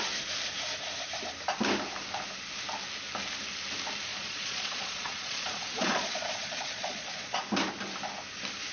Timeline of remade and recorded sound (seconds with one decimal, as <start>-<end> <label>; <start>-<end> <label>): 0.0-4.1 recorded; 4.1-7.4 remade; 7.4-8.7 recorded